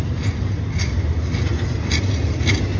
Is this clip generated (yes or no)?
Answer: no